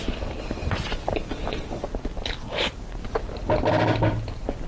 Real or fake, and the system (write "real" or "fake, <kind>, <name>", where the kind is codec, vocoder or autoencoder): real